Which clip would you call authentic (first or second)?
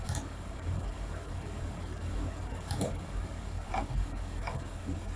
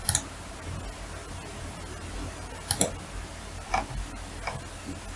second